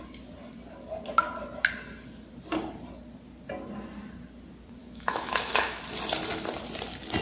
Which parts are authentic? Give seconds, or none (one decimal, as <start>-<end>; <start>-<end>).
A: 0.0-4.8; 5.8-7.2